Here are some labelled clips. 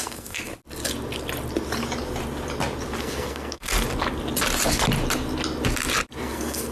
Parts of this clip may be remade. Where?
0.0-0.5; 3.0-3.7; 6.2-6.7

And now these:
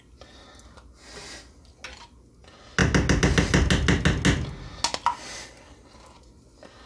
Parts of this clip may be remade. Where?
none